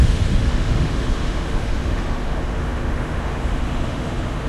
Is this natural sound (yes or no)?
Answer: no